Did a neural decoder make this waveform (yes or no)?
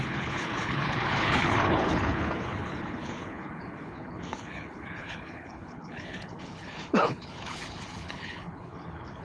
yes